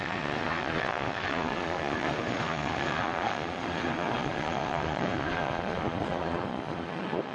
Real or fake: fake